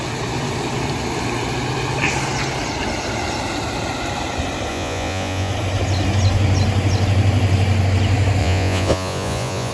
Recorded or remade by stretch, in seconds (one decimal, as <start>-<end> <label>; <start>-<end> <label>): 0.0-4.7 recorded; 4.7-5.5 remade; 5.5-8.4 recorded; 8.4-9.7 remade